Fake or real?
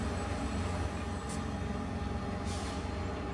real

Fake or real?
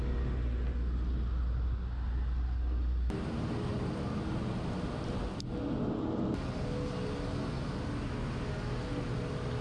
real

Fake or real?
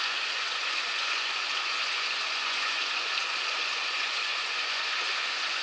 fake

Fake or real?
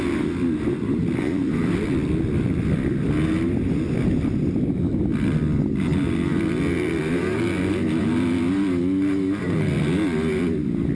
real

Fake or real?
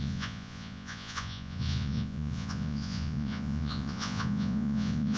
fake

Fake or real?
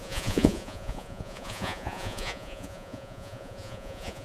fake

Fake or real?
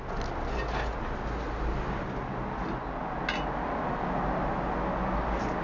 real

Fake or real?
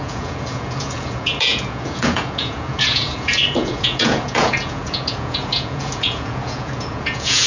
fake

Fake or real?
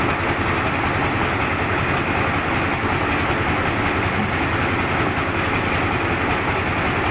real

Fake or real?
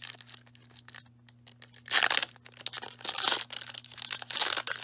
real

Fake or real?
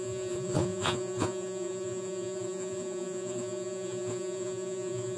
fake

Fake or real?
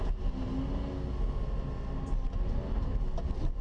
real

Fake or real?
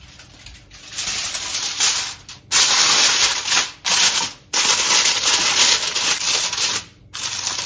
real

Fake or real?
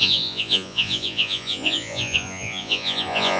fake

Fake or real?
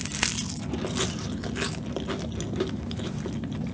real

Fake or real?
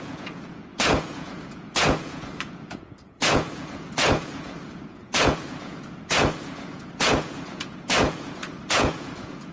fake